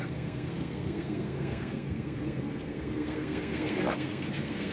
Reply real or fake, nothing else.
fake